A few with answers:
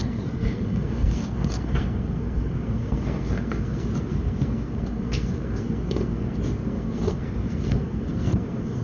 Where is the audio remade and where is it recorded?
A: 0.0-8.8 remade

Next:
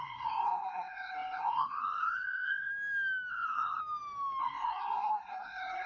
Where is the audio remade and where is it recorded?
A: 0.0-2.7 remade; 2.7-3.3 recorded; 3.3-3.8 remade; 3.8-4.4 recorded; 4.4-5.9 remade